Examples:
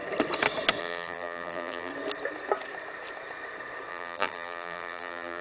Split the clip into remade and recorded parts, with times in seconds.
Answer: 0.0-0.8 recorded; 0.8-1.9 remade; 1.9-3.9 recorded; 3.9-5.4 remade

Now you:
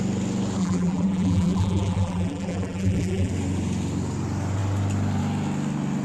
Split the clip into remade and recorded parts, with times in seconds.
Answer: 0.0-0.6 recorded; 0.6-3.3 remade; 3.3-6.0 recorded

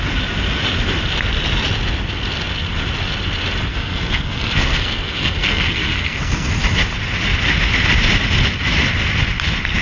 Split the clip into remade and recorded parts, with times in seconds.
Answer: 0.0-3.7 recorded; 3.7-6.5 remade; 6.5-9.8 recorded

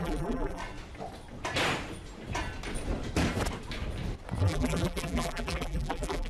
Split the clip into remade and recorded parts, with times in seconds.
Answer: 0.0-0.6 remade; 0.6-4.4 recorded; 4.4-6.3 remade

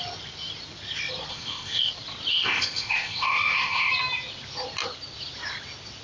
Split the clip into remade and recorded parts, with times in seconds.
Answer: 0.0-1.3 recorded; 1.3-1.9 remade; 1.9-2.3 recorded; 2.3-3.9 remade; 3.9-6.0 recorded

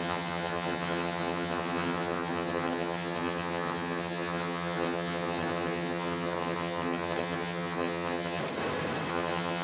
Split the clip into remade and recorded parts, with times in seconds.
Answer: 0.0-8.4 remade; 8.4-9.1 recorded; 9.1-9.6 remade